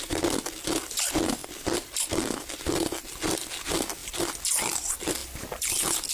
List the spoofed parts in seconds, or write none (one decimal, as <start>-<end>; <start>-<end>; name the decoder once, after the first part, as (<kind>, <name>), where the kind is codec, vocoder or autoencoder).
4.0-4.5 (vocoder, BigVGAN v2)